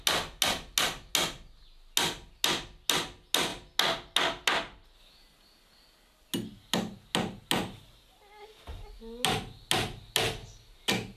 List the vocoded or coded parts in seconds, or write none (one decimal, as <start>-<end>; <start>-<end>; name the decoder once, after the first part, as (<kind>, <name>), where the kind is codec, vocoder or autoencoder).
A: none